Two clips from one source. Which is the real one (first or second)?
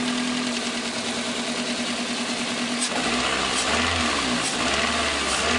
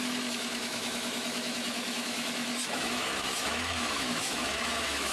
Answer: first